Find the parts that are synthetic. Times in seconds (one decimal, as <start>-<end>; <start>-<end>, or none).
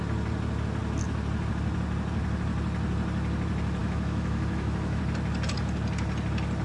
3.8-5.0